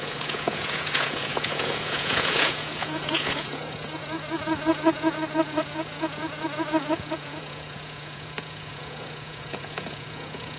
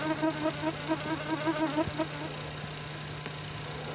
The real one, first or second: second